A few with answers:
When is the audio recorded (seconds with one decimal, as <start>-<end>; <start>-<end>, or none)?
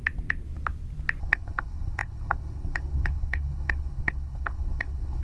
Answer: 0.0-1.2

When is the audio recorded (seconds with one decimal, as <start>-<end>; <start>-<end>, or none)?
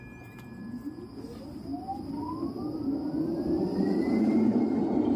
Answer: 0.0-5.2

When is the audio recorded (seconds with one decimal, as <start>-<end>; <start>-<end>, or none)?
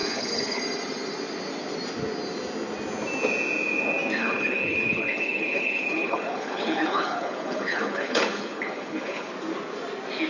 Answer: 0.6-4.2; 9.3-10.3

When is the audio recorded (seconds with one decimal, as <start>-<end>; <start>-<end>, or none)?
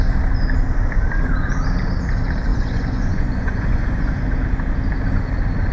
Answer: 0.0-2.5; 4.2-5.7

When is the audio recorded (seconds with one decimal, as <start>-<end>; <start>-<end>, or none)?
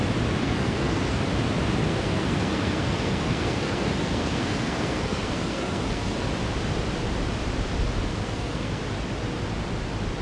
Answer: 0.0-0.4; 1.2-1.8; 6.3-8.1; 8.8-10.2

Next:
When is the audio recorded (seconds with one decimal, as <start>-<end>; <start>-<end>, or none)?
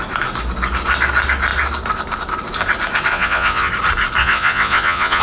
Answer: 0.0-3.1; 3.7-4.2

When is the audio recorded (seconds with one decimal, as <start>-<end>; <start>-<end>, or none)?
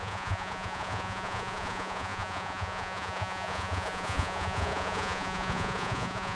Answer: none